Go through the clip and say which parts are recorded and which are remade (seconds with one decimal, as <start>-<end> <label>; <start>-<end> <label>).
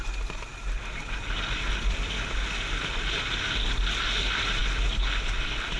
0.0-5.8 recorded